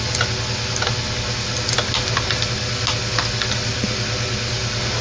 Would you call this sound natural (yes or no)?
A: yes